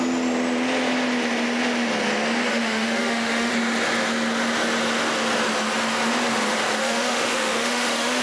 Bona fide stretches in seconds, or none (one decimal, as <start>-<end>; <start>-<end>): 0.0-2.5; 3.5-6.8